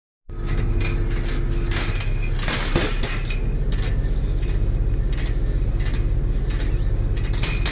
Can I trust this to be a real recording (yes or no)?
yes